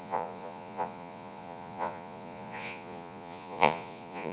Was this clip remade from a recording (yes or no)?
yes